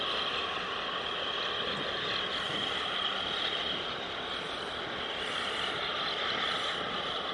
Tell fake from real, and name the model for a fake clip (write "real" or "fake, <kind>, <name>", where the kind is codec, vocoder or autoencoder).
real